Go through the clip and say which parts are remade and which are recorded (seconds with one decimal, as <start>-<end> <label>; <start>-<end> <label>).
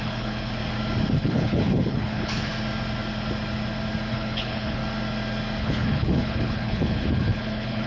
0.0-0.6 remade; 0.6-1.1 recorded; 1.1-2.5 remade; 2.5-4.1 recorded; 4.1-4.8 remade; 4.8-5.6 recorded; 5.6-7.9 remade